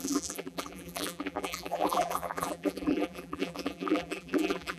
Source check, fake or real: fake